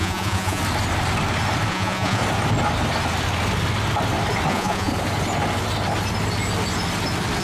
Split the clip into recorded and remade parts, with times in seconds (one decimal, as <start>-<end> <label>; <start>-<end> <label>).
0.0-0.6 remade; 0.6-1.7 recorded; 1.7-2.2 remade; 2.2-4.5 recorded; 4.5-4.9 remade; 4.9-7.4 recorded